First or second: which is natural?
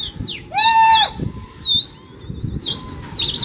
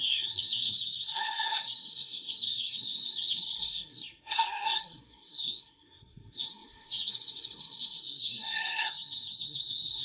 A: first